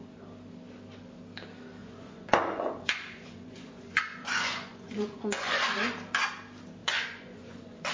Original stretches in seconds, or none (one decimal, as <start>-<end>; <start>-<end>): 0.0-1.8; 5.8-6.8